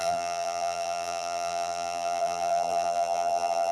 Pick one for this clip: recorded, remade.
remade